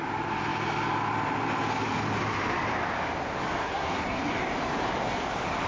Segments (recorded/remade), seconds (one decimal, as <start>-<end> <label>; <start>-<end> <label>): 0.0-3.6 recorded; 3.6-4.2 remade; 4.2-5.7 recorded